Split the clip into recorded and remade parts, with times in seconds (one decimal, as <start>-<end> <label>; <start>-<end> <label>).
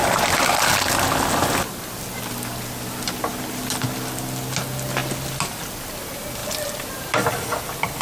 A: 0.0-6.4 recorded; 6.4-7.3 remade; 7.3-8.0 recorded